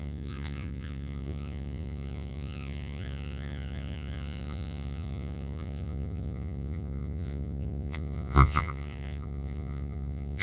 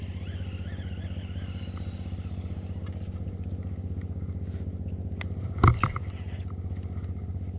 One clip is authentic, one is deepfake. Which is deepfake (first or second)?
first